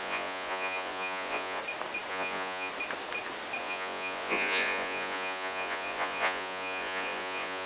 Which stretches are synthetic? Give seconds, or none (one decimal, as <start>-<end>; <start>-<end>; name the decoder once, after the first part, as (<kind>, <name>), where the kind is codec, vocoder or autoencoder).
0.0-1.6 (vocoder, Vocos); 2.1-2.7; 3.6-7.7